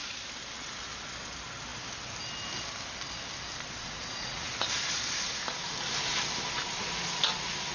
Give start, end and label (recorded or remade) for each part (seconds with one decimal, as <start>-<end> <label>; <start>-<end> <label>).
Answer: 0.0-3.8 recorded; 3.8-4.5 remade; 4.5-7.7 recorded